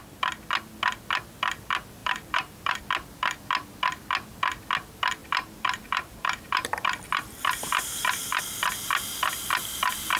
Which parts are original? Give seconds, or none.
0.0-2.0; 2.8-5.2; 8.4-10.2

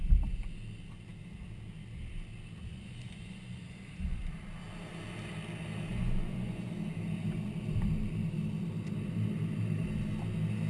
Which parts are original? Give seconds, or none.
0.0-2.7; 4.2-5.9; 6.7-10.7